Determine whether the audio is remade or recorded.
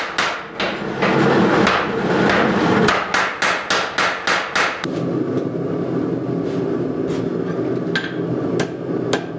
recorded